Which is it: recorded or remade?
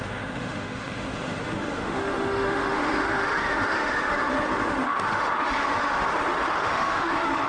remade